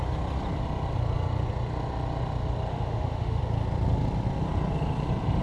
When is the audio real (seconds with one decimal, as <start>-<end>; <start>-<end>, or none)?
0.0-2.7; 3.4-5.4